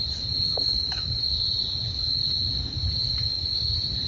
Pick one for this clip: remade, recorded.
recorded